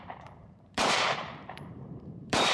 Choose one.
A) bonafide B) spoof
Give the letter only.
B